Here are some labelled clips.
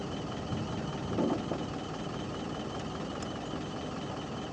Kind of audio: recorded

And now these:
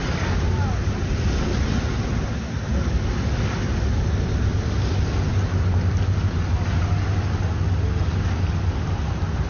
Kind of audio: recorded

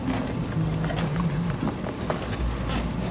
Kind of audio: recorded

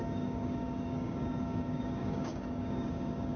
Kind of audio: remade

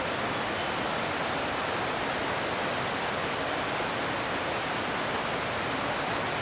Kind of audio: recorded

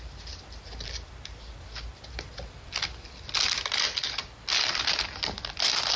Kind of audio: recorded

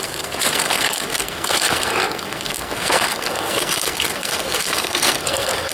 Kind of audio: remade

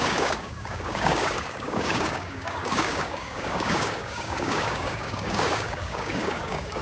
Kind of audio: remade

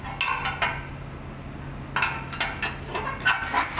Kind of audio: recorded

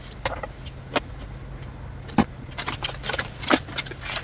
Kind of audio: recorded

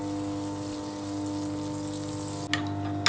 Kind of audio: recorded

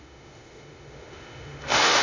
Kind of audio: remade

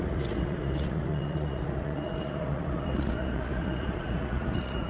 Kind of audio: remade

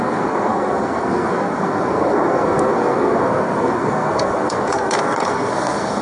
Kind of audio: remade